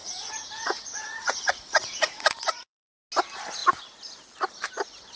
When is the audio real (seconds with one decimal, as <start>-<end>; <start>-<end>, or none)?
2.9-5.2

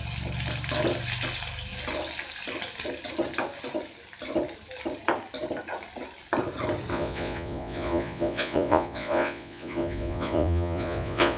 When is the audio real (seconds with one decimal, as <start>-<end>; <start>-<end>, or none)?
0.0-6.9

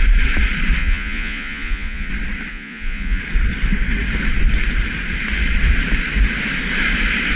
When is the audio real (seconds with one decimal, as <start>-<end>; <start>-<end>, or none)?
0.0-0.8; 2.1-2.5; 3.2-7.4

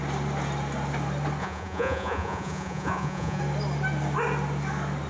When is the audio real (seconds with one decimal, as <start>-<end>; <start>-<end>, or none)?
0.0-1.4; 3.4-5.1

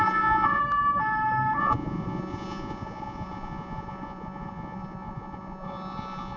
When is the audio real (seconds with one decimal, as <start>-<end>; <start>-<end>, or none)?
0.6-1.6

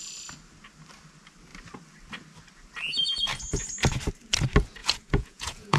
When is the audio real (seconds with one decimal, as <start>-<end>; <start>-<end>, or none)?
0.0-4.8

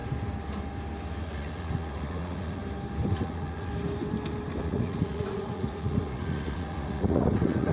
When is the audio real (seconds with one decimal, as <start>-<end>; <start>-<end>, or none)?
0.0-1.2; 2.6-3.1; 3.7-4.6

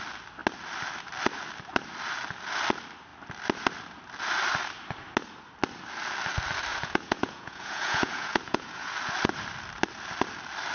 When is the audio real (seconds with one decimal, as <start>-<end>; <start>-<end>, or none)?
0.0-6.7; 8.9-10.7